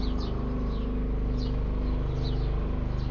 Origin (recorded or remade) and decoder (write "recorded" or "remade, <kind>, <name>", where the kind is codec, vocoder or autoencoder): recorded